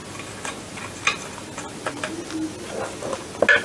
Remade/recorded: recorded